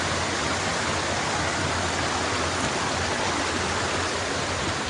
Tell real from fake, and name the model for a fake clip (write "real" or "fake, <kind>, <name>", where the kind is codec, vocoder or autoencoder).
real